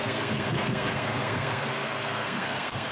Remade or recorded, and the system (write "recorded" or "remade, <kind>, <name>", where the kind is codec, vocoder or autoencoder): remade, codec, SNAC